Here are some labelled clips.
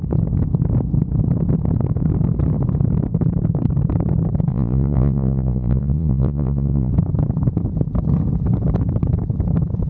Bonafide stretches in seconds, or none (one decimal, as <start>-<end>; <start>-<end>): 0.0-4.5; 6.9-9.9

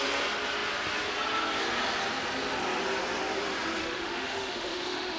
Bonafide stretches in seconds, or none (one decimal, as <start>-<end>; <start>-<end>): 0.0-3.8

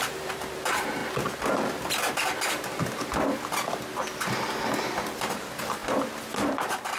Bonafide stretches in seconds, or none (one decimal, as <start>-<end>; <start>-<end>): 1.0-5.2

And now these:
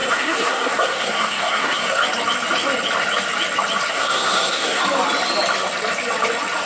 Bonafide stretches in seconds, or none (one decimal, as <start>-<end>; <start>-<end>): 2.0-3.9; 4.8-6.7

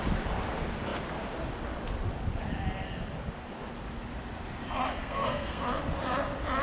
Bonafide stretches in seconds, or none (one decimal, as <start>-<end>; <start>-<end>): 0.0-5.0; 5.6-6.6